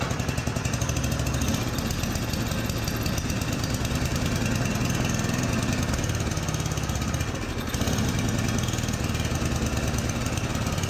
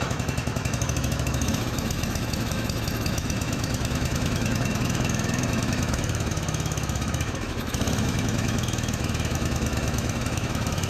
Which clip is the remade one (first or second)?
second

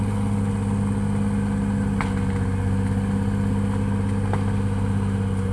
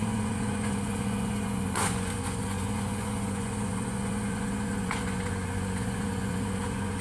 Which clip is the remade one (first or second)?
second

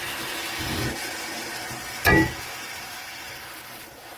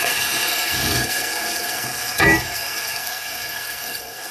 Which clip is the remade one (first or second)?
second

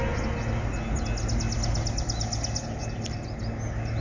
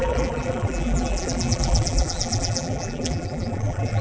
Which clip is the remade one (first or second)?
second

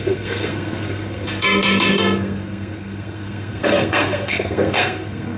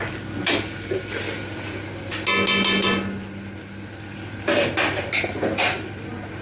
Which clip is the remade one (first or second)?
first